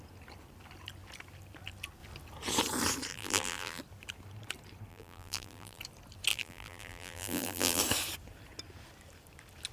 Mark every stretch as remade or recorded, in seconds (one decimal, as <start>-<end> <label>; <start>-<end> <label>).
0.0-3.1 recorded; 3.1-3.8 remade; 3.8-4.9 recorded; 4.9-5.8 remade; 5.8-6.3 recorded; 6.3-7.8 remade; 7.8-9.7 recorded